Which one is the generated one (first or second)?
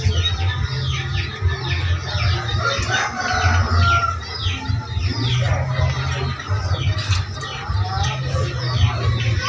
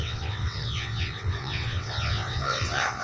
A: second